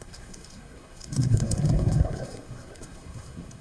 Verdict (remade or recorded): remade